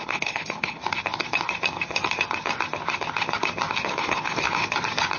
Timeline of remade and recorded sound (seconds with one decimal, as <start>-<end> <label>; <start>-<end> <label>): 0.0-0.8 remade; 0.8-3.9 recorded; 3.9-4.6 remade; 4.6-5.2 recorded